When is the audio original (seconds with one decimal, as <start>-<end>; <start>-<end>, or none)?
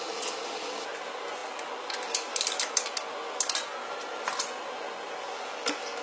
0.0-6.0